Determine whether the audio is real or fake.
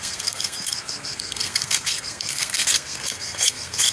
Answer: fake